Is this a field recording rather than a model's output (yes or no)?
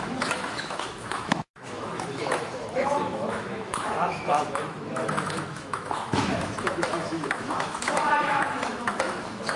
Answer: no